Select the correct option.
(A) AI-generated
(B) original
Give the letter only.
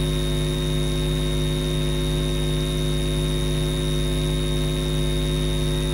B